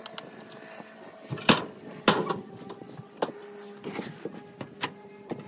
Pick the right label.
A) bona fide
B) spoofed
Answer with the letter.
A